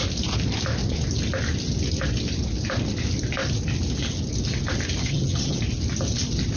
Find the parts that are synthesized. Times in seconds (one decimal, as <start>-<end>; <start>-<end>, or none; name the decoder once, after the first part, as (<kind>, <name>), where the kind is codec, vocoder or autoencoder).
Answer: 5.0-5.6 (vocoder, HiFi-GAN)